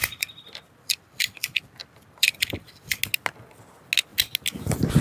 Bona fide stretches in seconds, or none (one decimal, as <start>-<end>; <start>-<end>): 3.0-5.0